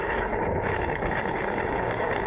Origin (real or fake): fake